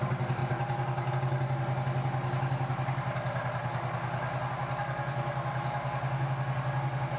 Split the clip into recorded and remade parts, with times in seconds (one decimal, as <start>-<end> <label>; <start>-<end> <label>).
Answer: 0.0-7.2 recorded